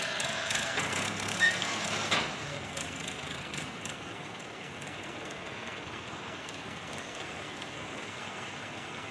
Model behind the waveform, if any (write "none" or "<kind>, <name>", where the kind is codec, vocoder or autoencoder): codec, SNAC